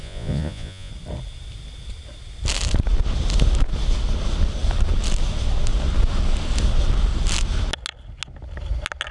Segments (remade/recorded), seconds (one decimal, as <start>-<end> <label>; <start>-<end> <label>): 0.0-0.9 remade; 0.9-9.1 recorded